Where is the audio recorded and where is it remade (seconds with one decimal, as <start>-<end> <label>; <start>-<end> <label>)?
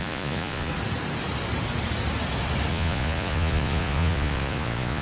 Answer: 0.0-0.7 remade; 0.7-2.7 recorded; 2.7-5.0 remade